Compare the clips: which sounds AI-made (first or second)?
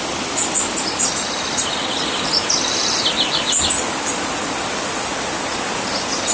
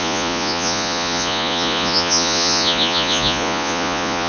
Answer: second